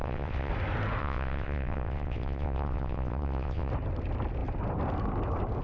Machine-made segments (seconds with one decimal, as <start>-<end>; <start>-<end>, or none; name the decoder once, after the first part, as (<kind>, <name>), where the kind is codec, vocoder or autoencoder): 0.0-0.5 (vocoder, WaveNeXt); 1.0-3.7